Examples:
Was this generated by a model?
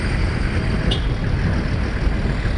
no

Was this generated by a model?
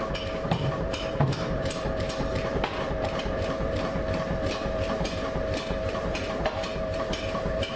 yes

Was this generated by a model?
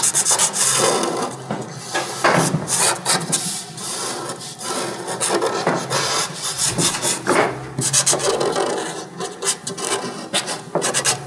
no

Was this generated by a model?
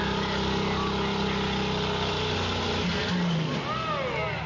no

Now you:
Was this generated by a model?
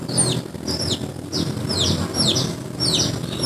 no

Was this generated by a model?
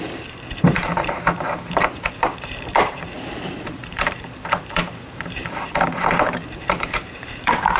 yes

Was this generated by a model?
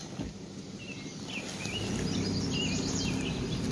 no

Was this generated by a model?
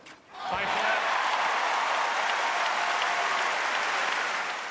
no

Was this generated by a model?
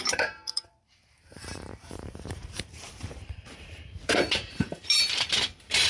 yes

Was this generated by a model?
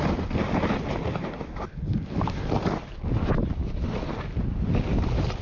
no